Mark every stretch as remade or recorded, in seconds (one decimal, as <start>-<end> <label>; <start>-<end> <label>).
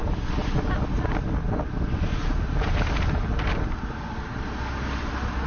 0.0-5.5 recorded